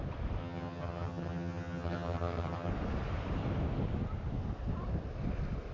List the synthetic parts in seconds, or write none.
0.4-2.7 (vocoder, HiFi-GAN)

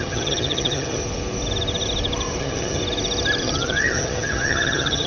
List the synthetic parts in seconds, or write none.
0.0-1.0 (vocoder, HiFi-GAN); 2.4-2.8; 3.4-5.1